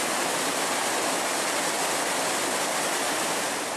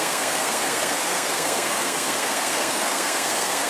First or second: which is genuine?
first